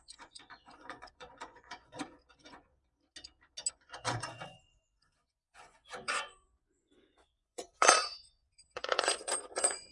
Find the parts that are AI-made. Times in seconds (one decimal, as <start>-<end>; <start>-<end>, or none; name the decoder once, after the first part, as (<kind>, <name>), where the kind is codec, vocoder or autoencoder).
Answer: 0.0-2.7 (vocoder, Vocos); 3.7-9.9